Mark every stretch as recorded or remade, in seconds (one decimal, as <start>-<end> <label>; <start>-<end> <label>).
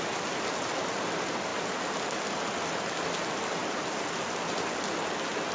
0.0-5.5 recorded